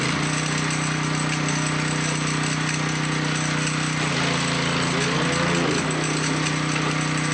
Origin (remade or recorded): recorded